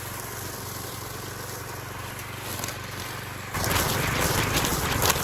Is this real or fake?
real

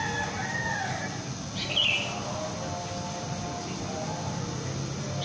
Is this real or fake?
real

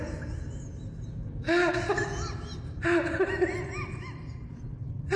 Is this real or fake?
real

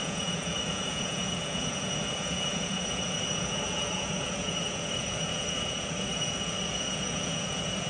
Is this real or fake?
fake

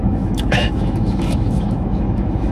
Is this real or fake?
fake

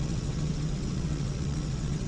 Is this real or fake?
fake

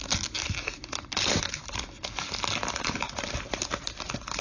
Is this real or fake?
real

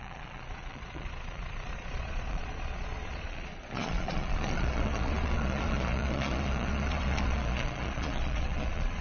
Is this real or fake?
fake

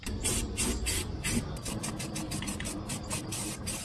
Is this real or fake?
real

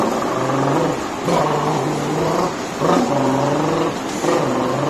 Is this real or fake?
real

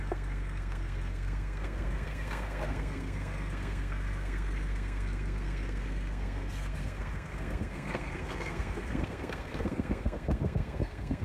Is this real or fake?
fake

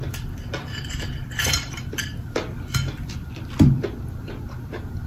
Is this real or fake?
fake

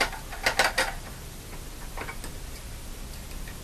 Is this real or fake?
real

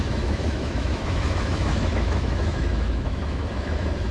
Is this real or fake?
fake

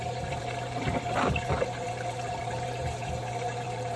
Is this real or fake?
fake